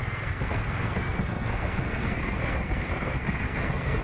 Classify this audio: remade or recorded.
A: remade